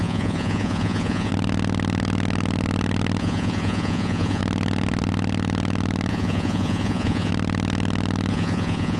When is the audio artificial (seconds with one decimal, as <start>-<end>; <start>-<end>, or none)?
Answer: 0.0-1.3; 3.2-4.4; 6.1-7.3; 8.3-9.0